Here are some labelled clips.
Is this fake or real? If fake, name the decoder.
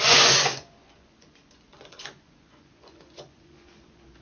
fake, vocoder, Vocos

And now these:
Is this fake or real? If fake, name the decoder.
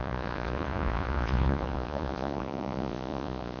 fake, vocoder, Vocos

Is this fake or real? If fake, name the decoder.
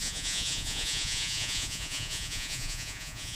fake, vocoder, Vocos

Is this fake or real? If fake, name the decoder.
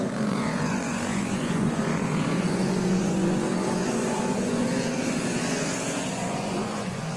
fake, vocoder, Vocos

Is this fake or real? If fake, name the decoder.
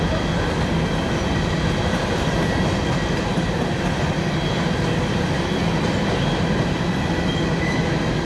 real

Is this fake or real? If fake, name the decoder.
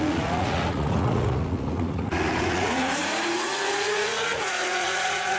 fake, vocoder, Vocos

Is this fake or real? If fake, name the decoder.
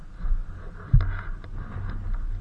real